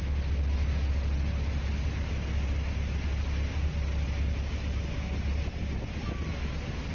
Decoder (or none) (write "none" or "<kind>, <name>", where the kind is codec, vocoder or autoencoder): none